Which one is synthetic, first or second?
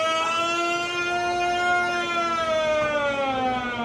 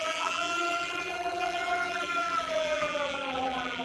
second